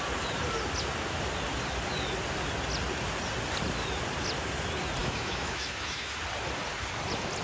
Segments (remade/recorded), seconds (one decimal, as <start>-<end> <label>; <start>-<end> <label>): 0.0-5.0 recorded; 5.0-6.2 remade; 6.2-7.4 recorded